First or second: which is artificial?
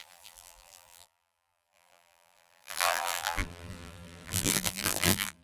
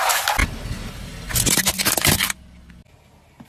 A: first